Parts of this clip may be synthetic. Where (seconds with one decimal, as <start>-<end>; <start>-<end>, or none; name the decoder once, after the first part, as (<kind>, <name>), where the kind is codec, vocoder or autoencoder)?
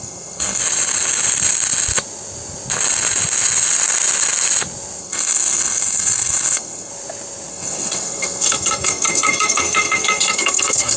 0.0-0.6 (codec, SNAC); 5.0-6.9; 7.5-11.0